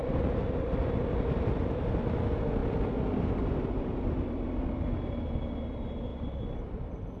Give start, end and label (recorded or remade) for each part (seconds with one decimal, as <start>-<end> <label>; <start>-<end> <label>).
0.0-7.2 recorded